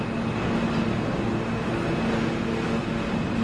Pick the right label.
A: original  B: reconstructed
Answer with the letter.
A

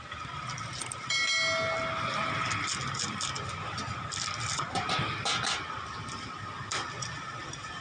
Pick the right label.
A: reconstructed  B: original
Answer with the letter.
B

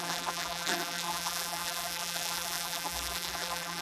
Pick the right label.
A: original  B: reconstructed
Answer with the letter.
B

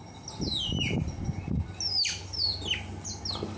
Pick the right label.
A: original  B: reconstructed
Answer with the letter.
A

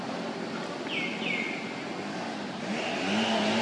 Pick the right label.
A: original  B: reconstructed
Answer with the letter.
A